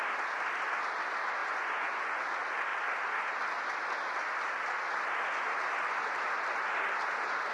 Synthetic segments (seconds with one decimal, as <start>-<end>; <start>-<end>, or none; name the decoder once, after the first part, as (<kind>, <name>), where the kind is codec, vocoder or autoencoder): 1.4-2.2 (vocoder, Vocos)